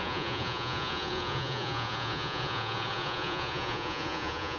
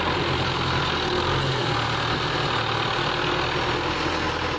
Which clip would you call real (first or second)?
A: second